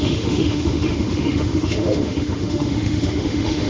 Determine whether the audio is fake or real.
fake